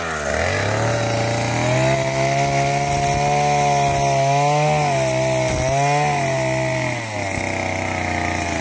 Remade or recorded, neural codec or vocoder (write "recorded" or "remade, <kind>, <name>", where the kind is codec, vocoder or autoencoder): recorded